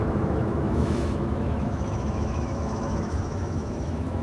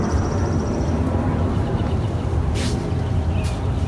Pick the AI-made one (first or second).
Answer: first